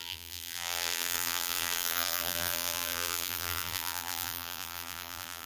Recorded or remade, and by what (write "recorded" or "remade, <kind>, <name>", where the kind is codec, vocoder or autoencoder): remade, vocoder, BigVGAN v2